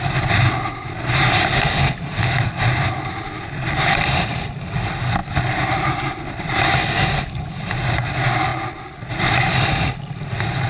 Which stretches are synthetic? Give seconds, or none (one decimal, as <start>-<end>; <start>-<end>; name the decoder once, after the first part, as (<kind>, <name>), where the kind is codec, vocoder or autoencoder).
none